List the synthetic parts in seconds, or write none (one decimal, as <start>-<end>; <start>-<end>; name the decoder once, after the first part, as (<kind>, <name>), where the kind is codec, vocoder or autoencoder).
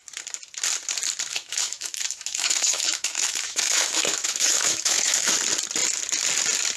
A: 1.3-5.3 (autoencoder, DAC-VAE)